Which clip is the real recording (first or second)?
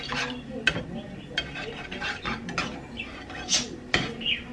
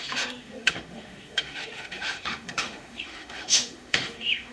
first